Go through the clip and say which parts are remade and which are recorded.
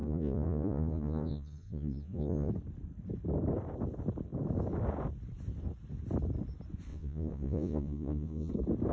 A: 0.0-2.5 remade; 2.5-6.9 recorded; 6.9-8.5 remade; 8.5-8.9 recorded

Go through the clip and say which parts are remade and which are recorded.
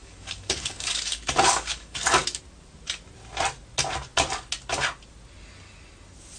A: 0.0-2.4 remade; 2.4-6.4 recorded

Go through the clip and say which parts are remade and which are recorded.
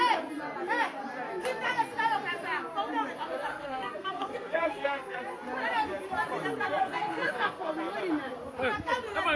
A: 0.0-3.5 recorded; 3.5-5.2 remade; 5.2-6.8 recorded; 6.8-7.7 remade; 7.7-9.4 recorded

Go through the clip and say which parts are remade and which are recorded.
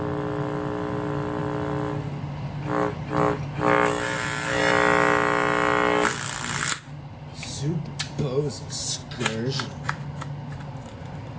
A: 0.0-11.4 recorded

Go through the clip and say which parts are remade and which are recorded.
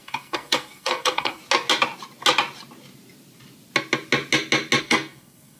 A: 0.0-1.4 remade; 1.4-4.8 recorded; 4.8-5.6 remade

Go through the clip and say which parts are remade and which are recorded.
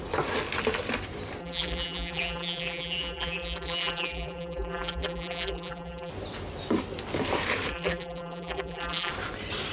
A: 0.0-1.4 recorded; 1.4-6.1 remade; 6.1-7.7 recorded; 7.7-9.1 remade; 9.1-9.7 recorded